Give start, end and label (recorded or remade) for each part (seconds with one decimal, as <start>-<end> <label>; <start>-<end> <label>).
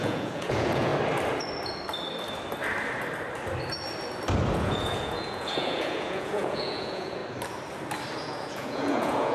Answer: 0.0-0.9 remade; 0.9-4.5 recorded; 4.5-7.2 remade; 7.2-8.2 recorded; 8.2-9.3 remade